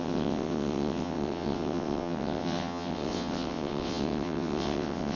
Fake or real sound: fake